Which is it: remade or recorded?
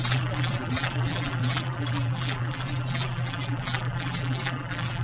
remade